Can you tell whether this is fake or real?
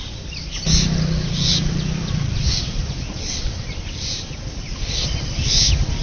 fake